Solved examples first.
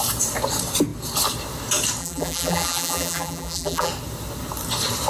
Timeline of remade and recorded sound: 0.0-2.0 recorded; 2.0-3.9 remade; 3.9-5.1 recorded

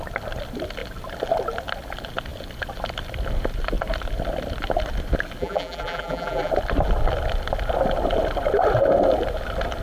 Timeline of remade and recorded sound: 0.0-5.4 recorded; 5.4-6.5 remade; 6.5-9.8 recorded